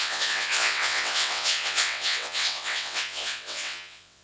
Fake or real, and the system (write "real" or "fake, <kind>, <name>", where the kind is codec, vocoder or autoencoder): fake, vocoder, WaveNeXt